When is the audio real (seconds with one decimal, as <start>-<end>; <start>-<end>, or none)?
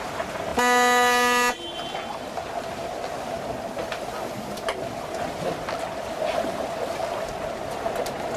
0.0-8.4